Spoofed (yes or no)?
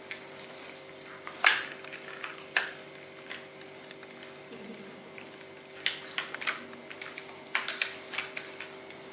no